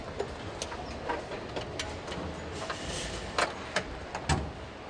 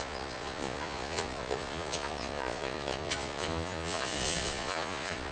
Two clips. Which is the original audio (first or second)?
first